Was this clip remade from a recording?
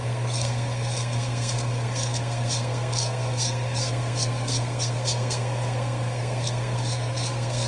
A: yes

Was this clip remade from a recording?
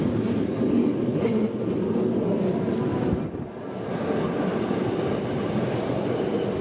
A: no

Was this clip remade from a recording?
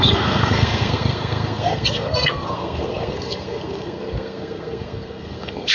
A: yes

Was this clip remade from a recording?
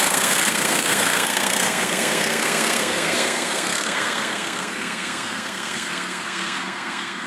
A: yes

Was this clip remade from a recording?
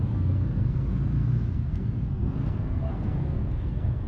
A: yes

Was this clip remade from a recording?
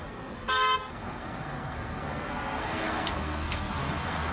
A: yes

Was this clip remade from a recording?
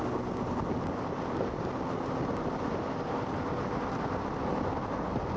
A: no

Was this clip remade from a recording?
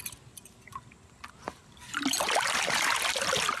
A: no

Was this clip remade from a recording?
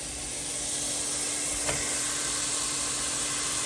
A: no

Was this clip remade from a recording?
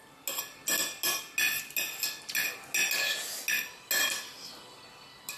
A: no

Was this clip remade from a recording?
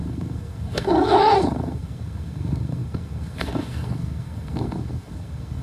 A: yes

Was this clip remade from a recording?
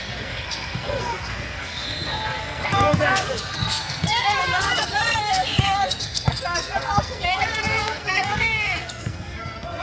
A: yes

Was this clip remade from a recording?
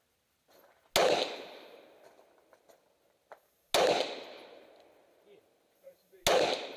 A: no